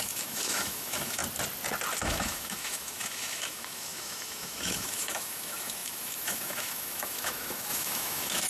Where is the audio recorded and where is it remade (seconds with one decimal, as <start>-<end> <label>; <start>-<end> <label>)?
0.0-1.2 remade; 1.2-2.0 recorded; 2.0-8.5 remade